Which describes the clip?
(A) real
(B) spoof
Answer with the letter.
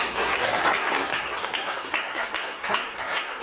B